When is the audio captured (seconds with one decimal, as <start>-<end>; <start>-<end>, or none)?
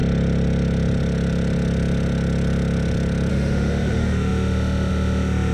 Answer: 0.0-3.3